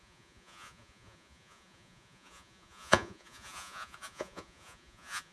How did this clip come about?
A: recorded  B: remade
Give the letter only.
B